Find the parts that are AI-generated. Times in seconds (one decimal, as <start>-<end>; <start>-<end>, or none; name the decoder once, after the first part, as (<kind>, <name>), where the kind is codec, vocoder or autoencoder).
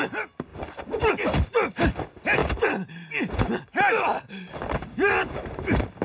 0.5-1.1 (vocoder, BigVGAN v2); 2.4-6.0